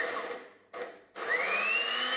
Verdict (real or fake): real